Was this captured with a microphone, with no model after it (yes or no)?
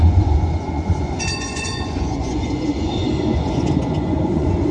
no